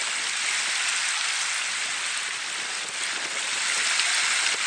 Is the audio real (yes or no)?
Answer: yes